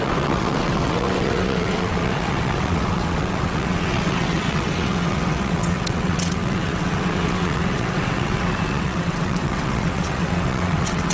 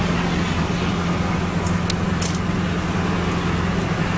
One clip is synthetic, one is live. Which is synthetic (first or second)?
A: first